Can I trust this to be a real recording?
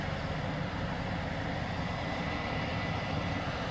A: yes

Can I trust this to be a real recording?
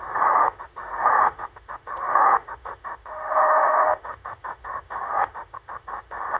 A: no